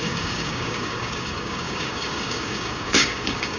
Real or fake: fake